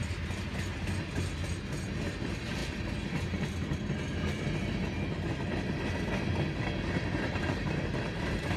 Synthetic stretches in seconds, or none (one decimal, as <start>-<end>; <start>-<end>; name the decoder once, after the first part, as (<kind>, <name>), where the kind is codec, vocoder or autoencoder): none